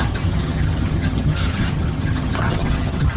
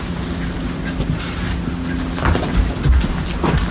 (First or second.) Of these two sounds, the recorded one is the second